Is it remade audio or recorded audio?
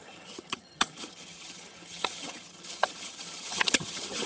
remade